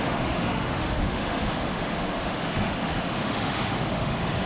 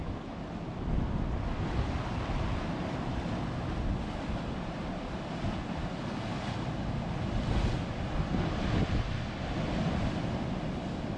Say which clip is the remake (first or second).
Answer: first